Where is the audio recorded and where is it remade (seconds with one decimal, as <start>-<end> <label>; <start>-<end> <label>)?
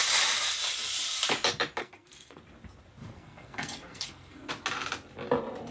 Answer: 0.0-1.8 recorded; 1.8-2.4 remade; 2.4-3.0 recorded; 3.0-4.5 remade; 4.5-5.7 recorded